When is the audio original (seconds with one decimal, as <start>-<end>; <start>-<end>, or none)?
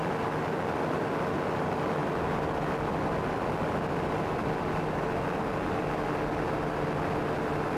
0.0-7.8